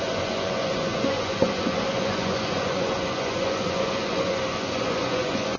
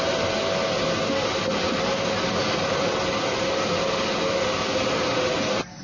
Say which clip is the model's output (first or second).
first